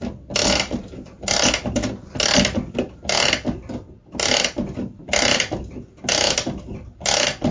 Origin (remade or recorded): recorded